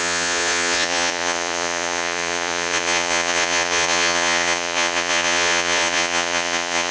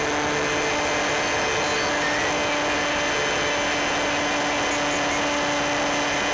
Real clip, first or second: second